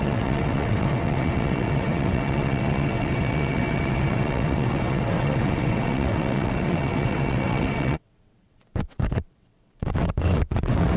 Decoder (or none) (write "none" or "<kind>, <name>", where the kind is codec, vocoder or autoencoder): vocoder, WaveNeXt